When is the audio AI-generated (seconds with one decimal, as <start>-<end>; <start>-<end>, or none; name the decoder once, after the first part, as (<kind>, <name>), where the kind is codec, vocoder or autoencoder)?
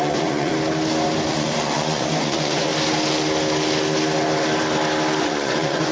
0.0-0.5 (vocoder, Vocos); 1.3-2.7; 5.2-5.9